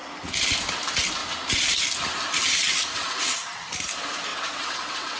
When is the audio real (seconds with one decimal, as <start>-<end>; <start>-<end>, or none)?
0.0-2.9; 3.6-4.3